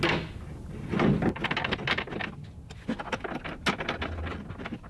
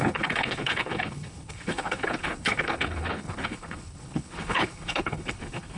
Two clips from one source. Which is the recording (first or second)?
first